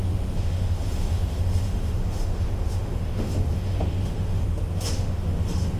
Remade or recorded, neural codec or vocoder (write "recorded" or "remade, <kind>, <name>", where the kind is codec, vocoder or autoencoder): remade, autoencoder, DAC-VAE